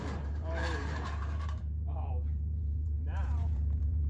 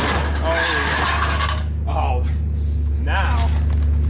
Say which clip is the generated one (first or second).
first